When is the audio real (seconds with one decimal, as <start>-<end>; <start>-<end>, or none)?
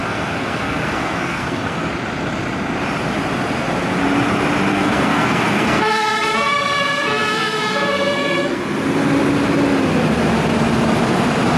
1.9-4.7; 8.6-11.6